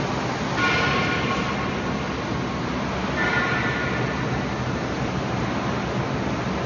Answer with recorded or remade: recorded